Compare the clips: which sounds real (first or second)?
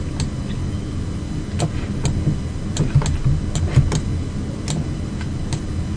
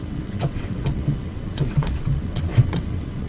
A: first